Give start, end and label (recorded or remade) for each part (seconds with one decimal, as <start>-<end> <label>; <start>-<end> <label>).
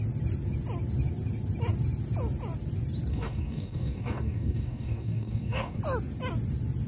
0.0-3.1 recorded; 3.1-5.8 remade; 5.8-6.9 recorded